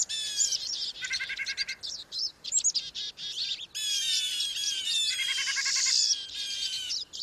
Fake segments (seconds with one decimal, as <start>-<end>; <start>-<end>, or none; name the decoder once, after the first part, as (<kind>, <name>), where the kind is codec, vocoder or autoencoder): 0.0-7.2 (vocoder, BigVGAN v2)